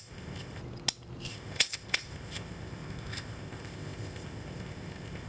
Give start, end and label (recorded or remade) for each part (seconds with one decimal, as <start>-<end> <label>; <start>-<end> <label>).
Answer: 0.0-0.6 remade; 0.6-1.3 recorded; 1.3-5.3 remade